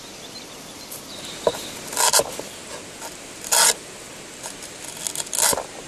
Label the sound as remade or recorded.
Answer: recorded